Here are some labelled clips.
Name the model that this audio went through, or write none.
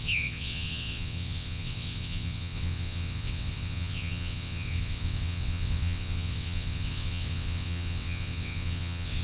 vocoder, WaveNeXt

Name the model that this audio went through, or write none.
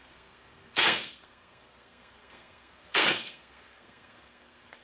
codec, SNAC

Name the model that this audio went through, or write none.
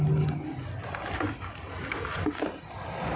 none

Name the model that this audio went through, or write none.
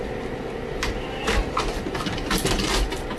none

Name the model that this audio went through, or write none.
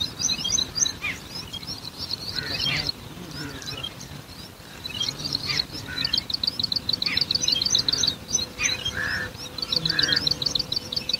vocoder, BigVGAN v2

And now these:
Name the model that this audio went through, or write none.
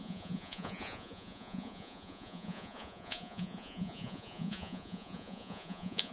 vocoder, Vocos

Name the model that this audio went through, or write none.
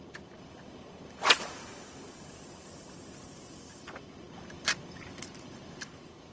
vocoder, BigVGAN v2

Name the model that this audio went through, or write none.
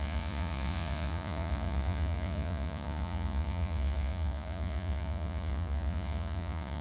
vocoder, Vocos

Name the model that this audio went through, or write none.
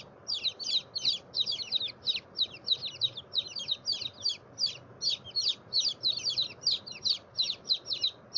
none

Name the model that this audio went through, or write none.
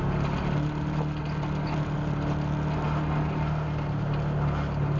none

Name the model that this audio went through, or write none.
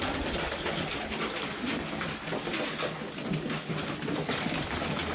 none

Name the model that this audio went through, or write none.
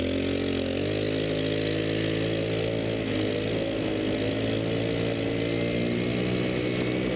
none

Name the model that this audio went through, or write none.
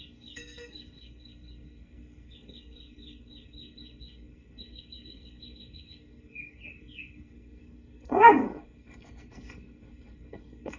codec, SNAC